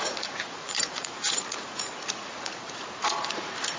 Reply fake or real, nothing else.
fake